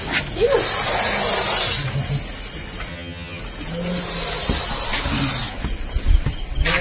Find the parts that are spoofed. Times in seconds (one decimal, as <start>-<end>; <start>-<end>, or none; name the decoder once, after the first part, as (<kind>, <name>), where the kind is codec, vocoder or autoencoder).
2.9-3.4 (vocoder, HiFi-GAN)